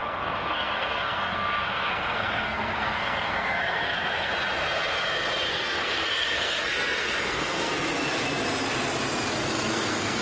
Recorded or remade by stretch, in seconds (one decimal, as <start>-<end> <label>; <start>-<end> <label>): 0.0-4.3 remade; 4.3-5.5 recorded; 5.5-7.7 remade; 7.7-9.4 recorded; 9.4-10.2 remade